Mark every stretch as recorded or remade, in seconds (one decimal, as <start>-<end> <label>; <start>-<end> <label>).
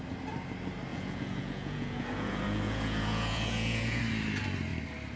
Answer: 0.0-0.9 recorded; 0.9-4.0 remade; 4.0-5.2 recorded